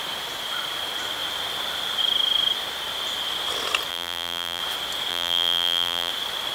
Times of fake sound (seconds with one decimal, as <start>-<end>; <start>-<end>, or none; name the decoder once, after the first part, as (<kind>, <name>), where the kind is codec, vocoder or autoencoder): 3.9-4.6 (vocoder, BigVGAN v2); 5.1-6.1